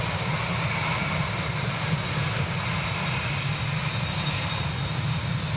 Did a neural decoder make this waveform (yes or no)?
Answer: no